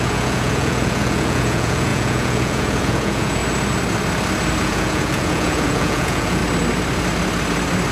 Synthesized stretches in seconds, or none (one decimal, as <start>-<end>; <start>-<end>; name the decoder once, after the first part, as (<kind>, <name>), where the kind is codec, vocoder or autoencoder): 0.0-3.4 (vocoder, Vocos); 4.6-6.4